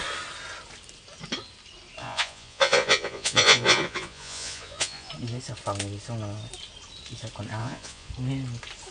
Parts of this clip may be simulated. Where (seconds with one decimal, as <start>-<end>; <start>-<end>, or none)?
2.0-5.1; 7.6-8.1